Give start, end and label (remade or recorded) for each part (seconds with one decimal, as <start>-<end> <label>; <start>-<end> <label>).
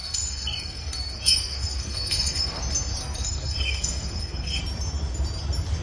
0.0-2.6 remade; 2.6-3.0 recorded; 3.0-4.6 remade; 4.6-5.8 recorded